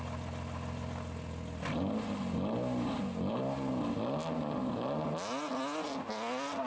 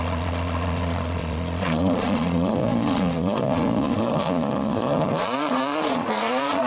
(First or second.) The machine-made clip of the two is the second